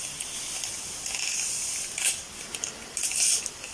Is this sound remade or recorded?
recorded